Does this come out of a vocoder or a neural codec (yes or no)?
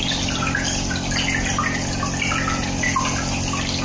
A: no